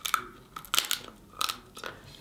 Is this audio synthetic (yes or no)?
no